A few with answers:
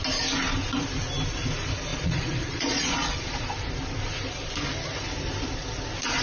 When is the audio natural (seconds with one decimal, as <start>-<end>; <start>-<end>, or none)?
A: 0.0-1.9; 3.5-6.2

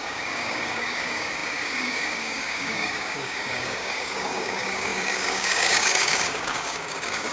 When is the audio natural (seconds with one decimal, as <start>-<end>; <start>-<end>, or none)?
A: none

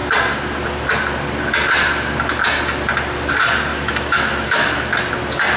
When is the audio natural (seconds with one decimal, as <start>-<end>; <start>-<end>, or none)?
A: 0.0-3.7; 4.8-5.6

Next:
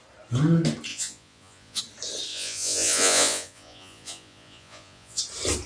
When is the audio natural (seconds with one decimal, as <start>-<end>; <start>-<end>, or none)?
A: 0.0-0.9; 1.8-2.3; 5.2-5.7